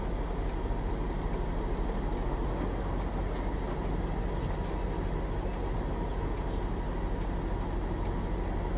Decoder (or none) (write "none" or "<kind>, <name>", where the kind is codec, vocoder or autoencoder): none